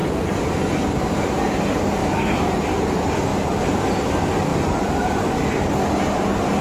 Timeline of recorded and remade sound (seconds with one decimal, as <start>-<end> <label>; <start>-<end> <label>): 0.0-2.0 recorded; 2.0-2.6 remade; 2.6-3.3 recorded; 3.3-4.1 remade; 4.1-4.5 recorded; 4.5-5.2 remade; 5.2-6.6 recorded